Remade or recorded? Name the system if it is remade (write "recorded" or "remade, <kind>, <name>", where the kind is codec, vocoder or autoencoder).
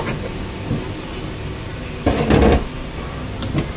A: recorded